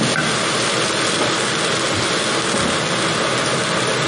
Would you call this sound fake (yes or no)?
no